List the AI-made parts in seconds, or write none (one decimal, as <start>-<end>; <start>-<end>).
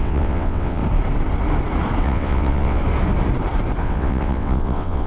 0.0-0.8; 2.0-2.8; 3.8-5.1